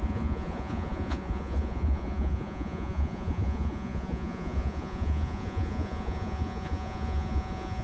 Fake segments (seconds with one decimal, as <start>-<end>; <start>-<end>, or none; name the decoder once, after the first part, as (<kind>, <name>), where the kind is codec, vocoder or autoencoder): 0.0-7.8 (vocoder, Vocos)

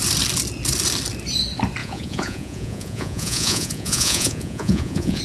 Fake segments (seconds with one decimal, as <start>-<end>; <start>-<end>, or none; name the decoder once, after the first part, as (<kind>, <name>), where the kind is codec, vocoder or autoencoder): 1.8-5.2 (vocoder, Vocos)

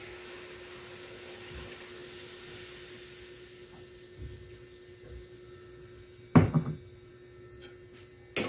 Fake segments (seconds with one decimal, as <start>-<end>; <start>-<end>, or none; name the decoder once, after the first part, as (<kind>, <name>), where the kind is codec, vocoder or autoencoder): none

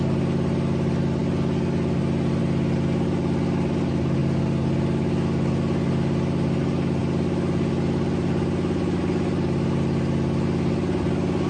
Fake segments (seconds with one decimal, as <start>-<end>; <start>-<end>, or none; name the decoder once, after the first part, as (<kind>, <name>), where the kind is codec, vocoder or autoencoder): none

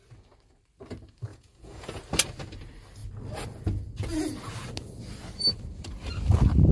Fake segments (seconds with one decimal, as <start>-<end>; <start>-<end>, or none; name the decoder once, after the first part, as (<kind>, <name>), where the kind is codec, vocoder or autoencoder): 1.3-2.0 (vocoder, Vocos)

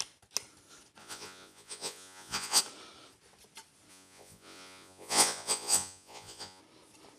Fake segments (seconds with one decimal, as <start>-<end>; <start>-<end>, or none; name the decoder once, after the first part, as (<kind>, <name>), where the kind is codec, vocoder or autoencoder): 1.0-2.6 (vocoder, Vocos); 3.9-6.6

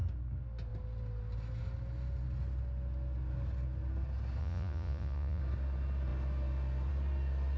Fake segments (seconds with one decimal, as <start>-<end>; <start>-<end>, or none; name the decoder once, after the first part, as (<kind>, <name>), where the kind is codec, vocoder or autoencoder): 4.4-5.4 (vocoder, Vocos)